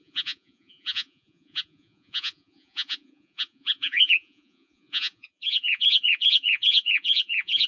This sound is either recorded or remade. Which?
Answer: remade